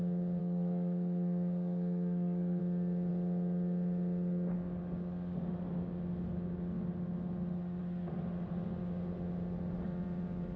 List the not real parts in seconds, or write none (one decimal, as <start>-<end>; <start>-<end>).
0.4-2.6